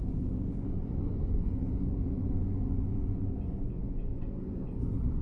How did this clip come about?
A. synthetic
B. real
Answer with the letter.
A